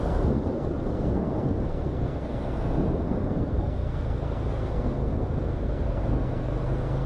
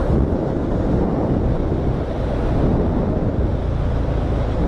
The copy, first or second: first